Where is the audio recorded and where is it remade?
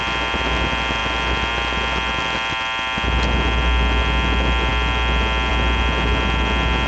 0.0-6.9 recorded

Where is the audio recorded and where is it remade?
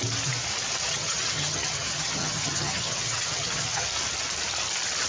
0.0-0.8 recorded; 0.8-3.9 remade; 3.9-5.1 recorded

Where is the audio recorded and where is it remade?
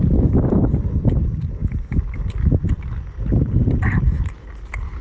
0.0-5.0 remade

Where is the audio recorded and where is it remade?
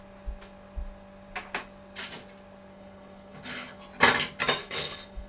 0.0-2.7 recorded; 2.7-3.8 remade; 3.8-4.6 recorded; 4.6-5.3 remade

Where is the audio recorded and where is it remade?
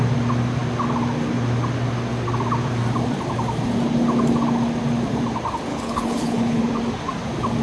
0.0-5.7 recorded; 5.7-6.6 remade; 6.6-7.6 recorded